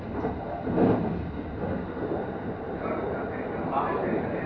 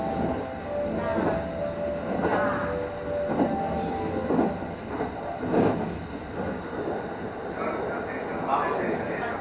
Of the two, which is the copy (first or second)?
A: first